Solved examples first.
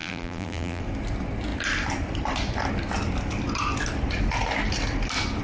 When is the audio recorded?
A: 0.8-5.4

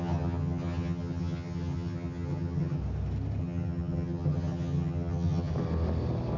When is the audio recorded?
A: 2.8-3.4; 5.5-6.4

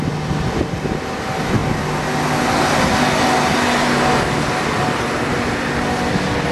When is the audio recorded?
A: 0.0-6.5

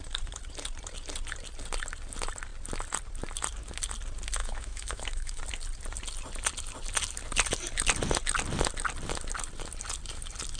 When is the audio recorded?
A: 0.0-4.4; 5.4-10.6

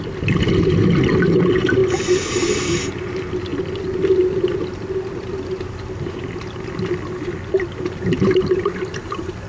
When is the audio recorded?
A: 0.0-9.5

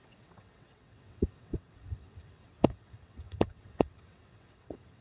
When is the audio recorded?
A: none

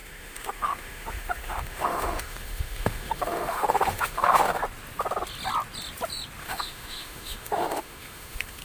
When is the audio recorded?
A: 4.6-6.4

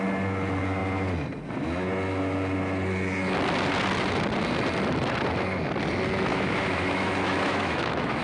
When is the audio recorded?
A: 0.0-6.3